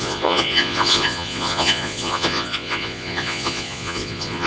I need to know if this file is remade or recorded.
remade